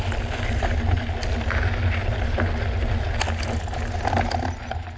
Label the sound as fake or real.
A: real